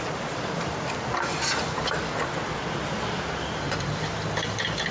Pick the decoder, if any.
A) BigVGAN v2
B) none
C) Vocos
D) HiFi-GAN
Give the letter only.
B